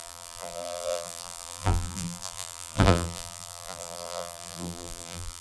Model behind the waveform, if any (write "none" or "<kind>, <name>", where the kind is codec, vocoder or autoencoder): vocoder, BigVGAN v2